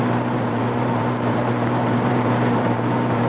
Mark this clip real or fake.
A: fake